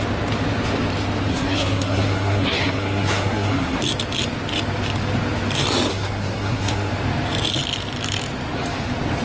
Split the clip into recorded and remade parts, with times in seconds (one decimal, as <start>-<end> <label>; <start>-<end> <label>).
0.0-1.3 recorded; 1.3-3.8 remade; 3.8-5.9 recorded; 5.9-6.9 remade; 6.9-9.2 recorded